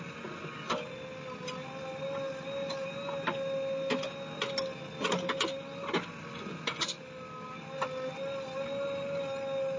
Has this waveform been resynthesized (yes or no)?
no